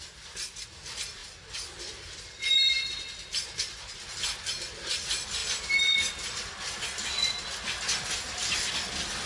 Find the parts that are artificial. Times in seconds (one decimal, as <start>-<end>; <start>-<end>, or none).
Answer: 1.2-2.2